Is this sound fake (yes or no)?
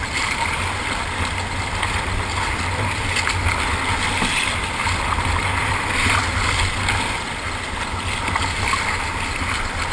no